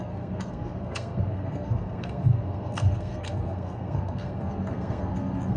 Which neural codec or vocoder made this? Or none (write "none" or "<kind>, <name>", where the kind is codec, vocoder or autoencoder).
codec, SNAC